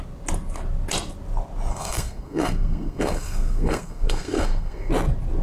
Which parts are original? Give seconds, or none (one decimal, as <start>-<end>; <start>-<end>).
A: 0.0-1.7; 4.9-5.4